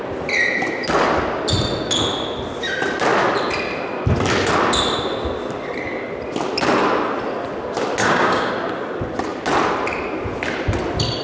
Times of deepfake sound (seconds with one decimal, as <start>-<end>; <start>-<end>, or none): 8.0-8.5